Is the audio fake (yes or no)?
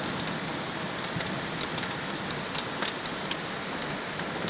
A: no